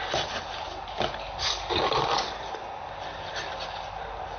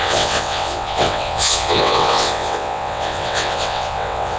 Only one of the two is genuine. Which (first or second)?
first